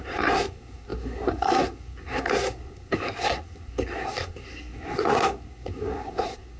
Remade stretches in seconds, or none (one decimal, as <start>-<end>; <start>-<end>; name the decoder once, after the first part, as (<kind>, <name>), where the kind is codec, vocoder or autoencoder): 0.0-6.6 (codec, SNAC)

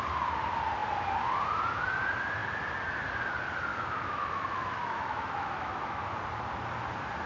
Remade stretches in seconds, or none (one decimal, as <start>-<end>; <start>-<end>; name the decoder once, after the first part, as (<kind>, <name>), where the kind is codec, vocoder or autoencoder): 3.7-6.0 (autoencoder, DAC-VAE)

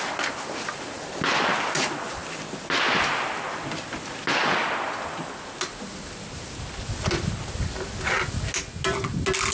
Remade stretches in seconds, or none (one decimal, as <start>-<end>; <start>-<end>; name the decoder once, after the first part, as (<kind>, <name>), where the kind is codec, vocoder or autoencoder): none

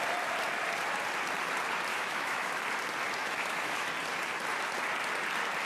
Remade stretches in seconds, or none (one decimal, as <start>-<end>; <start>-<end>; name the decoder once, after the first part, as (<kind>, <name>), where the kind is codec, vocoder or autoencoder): 1.9-2.6 (autoencoder, DAC-VAE); 3.2-3.9